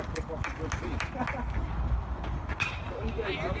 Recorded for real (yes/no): yes